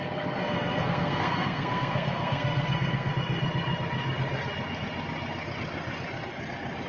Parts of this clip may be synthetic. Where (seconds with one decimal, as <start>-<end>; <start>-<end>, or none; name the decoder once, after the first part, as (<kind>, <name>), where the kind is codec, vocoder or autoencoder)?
0.4-3.1 (codec, SNAC)